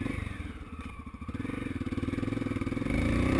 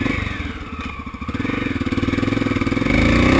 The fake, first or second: first